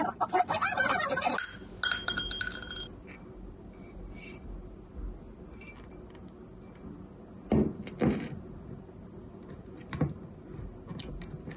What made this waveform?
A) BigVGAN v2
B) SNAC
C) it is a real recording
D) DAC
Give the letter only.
C